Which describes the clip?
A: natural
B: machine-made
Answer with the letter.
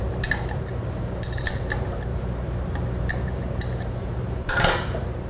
B